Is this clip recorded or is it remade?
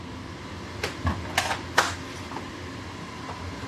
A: recorded